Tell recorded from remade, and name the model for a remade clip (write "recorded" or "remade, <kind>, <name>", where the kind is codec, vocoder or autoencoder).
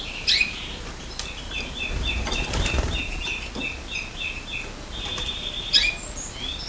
remade, vocoder, BigVGAN v2